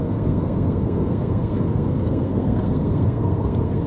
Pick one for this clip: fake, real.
fake